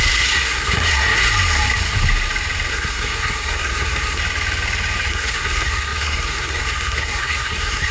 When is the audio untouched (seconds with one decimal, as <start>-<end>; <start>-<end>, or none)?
1.1-2.7; 4.2-5.1